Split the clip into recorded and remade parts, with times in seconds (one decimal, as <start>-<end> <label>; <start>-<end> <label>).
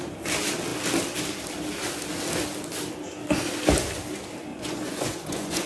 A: 0.0-4.5 recorded; 4.5-5.7 remade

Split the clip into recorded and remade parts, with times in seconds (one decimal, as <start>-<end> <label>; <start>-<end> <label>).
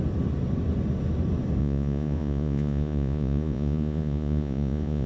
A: 0.0-1.6 recorded; 1.6-5.1 remade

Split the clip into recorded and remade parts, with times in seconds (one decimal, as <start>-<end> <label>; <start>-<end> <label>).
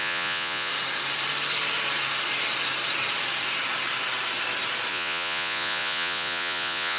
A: 0.0-0.7 remade; 0.7-4.9 recorded; 4.9-7.0 remade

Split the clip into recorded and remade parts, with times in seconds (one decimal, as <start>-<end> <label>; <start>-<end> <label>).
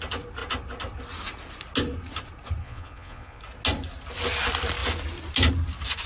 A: 0.0-2.6 recorded; 2.6-3.4 remade; 3.4-6.1 recorded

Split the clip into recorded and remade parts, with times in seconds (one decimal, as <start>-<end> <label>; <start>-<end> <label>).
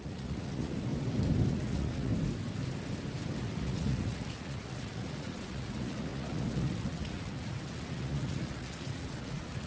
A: 0.0-0.9 remade; 0.9-1.5 recorded; 1.5-2.1 remade; 2.1-3.4 recorded; 3.4-9.7 remade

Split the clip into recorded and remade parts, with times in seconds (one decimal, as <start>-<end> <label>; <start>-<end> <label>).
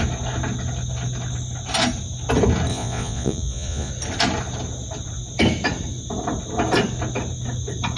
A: 0.0-2.7 recorded; 2.7-3.9 remade; 3.9-8.0 recorded